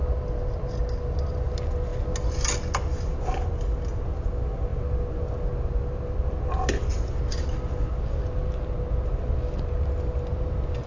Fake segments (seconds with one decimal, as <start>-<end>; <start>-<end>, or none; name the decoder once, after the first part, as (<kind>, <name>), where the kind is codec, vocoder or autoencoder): none